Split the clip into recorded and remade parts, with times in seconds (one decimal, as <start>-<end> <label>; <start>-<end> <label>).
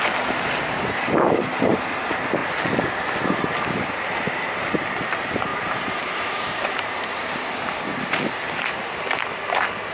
0.0-5.5 recorded; 5.5-7.2 remade; 7.2-9.9 recorded